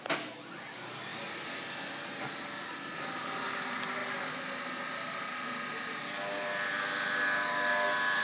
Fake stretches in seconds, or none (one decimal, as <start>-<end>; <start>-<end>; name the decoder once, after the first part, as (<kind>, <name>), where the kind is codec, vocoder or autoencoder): none